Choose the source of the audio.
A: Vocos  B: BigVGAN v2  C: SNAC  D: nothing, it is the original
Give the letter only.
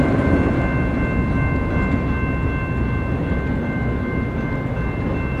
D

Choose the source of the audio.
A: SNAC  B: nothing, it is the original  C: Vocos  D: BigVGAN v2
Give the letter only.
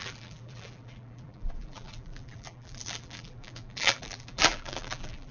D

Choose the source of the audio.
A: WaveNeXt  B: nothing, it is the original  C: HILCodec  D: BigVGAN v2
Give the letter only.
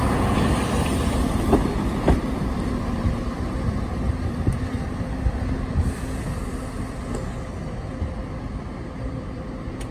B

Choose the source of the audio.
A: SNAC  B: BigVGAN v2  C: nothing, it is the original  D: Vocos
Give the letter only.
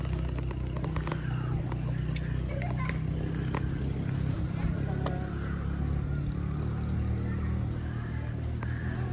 C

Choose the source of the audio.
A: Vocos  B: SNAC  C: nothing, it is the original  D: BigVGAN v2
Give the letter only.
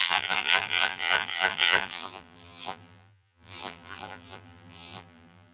D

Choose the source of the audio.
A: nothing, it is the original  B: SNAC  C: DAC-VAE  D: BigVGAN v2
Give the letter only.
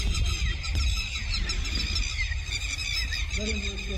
A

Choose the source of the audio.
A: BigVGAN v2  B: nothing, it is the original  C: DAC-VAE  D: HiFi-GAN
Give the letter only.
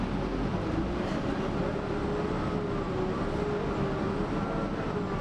B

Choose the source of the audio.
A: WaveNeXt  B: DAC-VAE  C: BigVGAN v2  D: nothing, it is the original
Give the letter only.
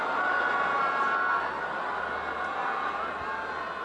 D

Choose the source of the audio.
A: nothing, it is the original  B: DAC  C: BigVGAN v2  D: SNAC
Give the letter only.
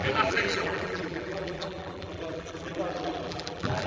C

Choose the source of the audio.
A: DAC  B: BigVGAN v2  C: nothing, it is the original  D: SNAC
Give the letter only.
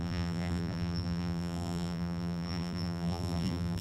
B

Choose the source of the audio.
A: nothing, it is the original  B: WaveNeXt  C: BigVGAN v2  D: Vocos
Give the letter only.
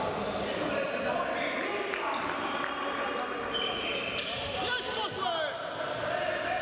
A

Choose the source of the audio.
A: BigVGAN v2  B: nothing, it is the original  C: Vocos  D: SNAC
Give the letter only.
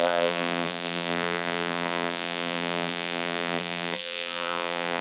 A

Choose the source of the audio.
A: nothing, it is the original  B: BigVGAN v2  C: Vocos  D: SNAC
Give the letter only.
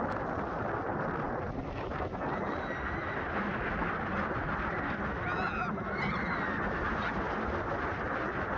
A